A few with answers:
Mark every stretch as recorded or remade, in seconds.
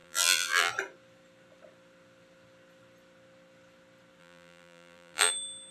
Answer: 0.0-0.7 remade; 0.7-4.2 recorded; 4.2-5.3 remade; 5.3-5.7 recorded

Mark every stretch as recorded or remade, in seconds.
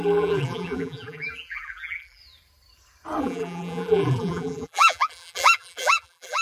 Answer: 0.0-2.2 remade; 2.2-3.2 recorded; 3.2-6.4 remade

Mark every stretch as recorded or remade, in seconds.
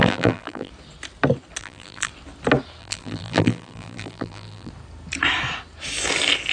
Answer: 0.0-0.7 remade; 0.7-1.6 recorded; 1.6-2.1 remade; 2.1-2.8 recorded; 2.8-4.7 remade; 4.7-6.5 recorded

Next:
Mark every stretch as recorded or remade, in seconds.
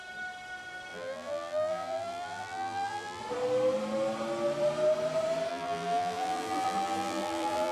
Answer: 0.0-0.9 recorded; 0.9-3.2 remade; 3.2-5.5 recorded; 5.5-7.7 remade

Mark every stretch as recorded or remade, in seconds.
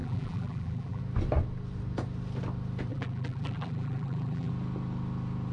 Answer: 0.0-1.0 remade; 1.0-2.9 recorded; 2.9-4.5 remade; 4.5-5.5 recorded